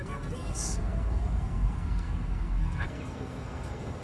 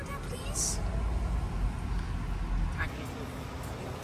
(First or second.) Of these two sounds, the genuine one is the second